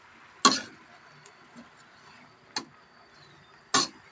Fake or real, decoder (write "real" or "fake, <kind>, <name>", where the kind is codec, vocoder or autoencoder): real